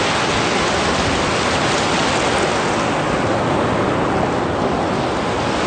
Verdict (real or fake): real